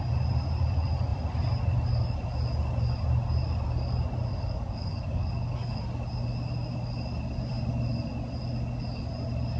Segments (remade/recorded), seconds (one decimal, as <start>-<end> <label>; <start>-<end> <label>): 0.0-4.3 recorded; 4.3-5.8 remade; 5.8-9.6 recorded